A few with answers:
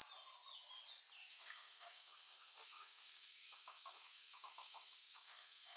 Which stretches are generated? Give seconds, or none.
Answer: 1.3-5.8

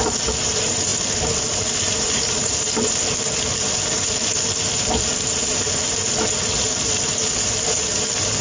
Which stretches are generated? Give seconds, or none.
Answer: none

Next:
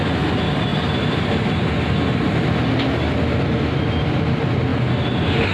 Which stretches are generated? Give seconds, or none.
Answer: none